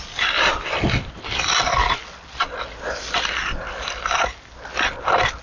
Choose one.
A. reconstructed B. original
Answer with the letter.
B